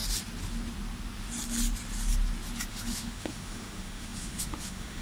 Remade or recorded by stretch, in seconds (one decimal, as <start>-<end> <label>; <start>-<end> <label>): 0.0-2.7 recorded; 2.7-5.0 remade